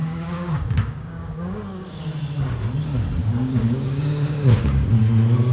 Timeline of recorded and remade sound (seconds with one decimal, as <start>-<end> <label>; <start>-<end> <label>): 0.0-2.0 remade; 2.0-3.2 recorded; 3.2-5.0 remade; 5.0-5.5 recorded